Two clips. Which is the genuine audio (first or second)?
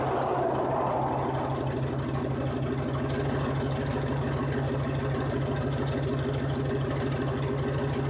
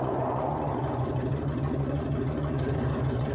first